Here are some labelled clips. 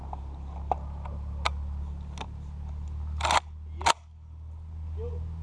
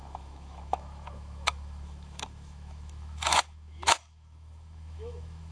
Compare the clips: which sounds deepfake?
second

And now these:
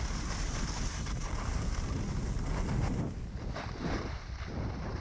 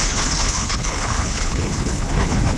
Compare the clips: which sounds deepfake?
second